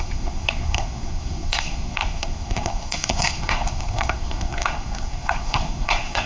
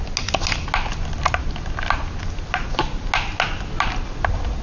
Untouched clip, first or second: second